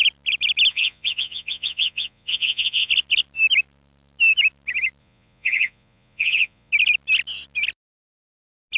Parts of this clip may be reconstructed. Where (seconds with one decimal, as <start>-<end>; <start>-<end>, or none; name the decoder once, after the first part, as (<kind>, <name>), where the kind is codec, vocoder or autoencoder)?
0.7-2.9 (vocoder, Vocos); 5.0-6.7